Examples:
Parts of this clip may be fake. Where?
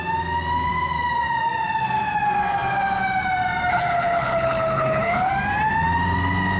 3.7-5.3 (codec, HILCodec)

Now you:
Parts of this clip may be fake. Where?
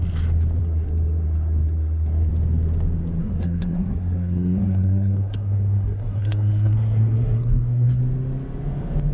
0.6-2.3 (codec, SNAC); 3.2-8.0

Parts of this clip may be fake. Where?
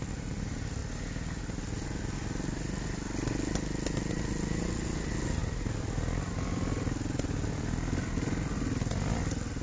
none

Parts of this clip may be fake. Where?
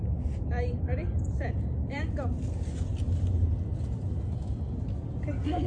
1.0-4.4 (vocoder, BigVGAN v2)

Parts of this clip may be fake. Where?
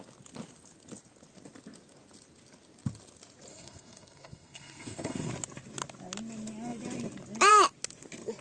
3.5-5.3 (codec, SNAC)